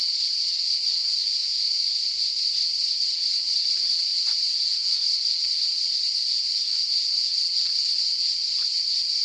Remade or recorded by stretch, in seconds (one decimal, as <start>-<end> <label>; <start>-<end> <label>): 0.0-1.0 remade; 1.0-2.5 recorded; 2.5-6.2 remade; 6.2-7.3 recorded; 7.3-9.2 remade